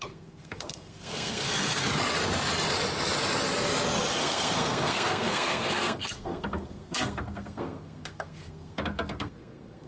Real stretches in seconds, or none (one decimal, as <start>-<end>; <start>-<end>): 1.8-4.2